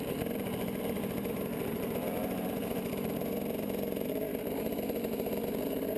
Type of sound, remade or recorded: remade